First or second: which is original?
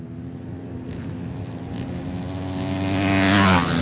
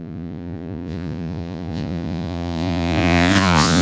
first